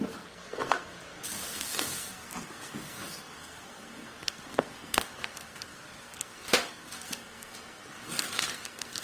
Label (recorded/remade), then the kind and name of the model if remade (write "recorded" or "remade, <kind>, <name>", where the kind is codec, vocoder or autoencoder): remade, codec, SNAC